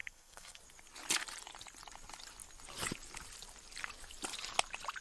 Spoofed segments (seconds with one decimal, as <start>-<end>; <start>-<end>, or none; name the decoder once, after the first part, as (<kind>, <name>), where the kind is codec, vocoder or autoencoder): 0.0-0.6 (codec, SNAC)